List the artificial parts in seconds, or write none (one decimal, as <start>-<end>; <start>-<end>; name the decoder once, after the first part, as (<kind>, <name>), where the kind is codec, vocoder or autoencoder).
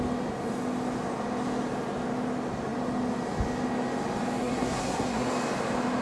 4.4-5.3 (codec, SNAC)